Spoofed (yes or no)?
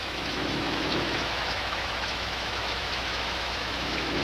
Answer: yes